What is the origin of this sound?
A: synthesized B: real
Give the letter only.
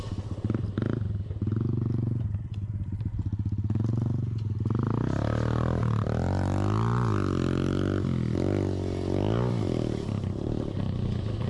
B